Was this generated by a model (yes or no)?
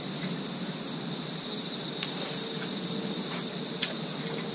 no